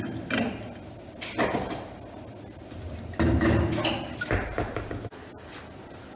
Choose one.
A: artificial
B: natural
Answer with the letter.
B